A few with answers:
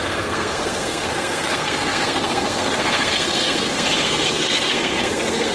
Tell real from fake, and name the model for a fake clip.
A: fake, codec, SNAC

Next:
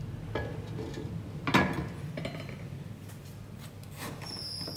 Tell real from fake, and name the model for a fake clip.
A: real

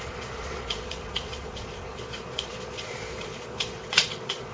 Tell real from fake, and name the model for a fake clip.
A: fake, vocoder, Vocos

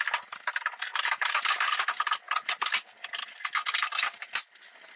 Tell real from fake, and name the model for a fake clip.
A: real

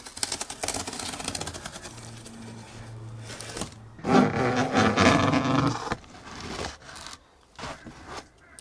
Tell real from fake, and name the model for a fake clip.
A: real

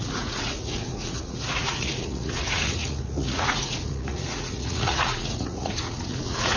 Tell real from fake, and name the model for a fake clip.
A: fake, vocoder, Vocos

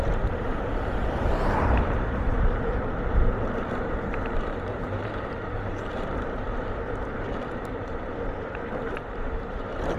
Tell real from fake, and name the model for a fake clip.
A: fake, vocoder, BigVGAN v2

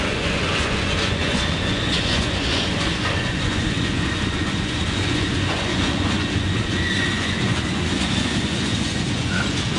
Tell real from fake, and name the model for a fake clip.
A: fake, vocoder, Vocos